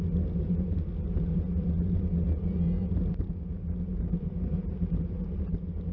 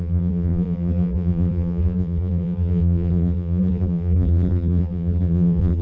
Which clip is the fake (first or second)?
second